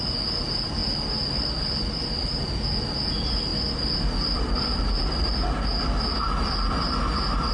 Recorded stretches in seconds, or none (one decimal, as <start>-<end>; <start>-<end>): 0.0-7.5